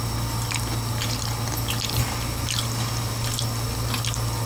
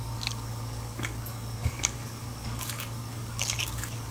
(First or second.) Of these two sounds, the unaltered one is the first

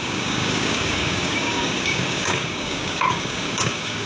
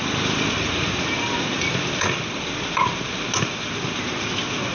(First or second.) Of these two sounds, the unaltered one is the second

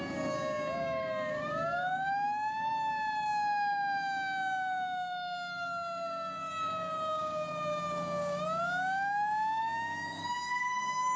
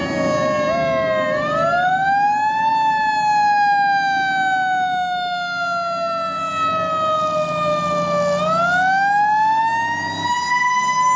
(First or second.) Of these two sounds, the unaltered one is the second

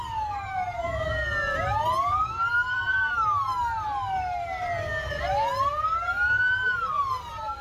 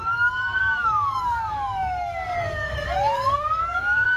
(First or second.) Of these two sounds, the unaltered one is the first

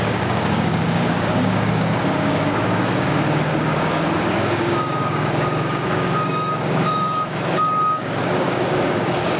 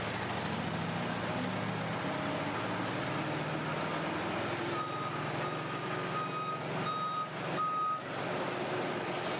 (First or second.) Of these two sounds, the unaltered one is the second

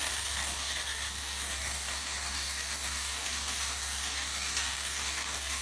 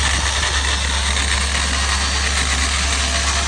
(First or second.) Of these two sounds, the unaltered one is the second